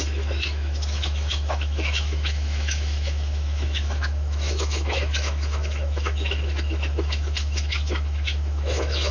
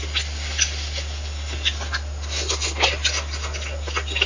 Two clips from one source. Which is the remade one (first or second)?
first